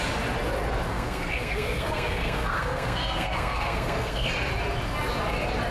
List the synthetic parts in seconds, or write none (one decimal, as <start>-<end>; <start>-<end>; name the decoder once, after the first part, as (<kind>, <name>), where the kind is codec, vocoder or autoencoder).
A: 0.9-4.3 (codec, SNAC)